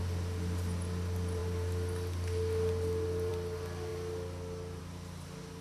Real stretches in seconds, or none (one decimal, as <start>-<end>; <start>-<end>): 0.0-5.6